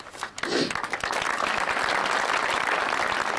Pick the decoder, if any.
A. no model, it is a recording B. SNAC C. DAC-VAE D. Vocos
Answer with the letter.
A